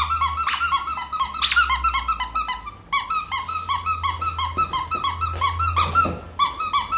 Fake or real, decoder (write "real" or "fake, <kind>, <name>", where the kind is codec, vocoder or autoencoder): real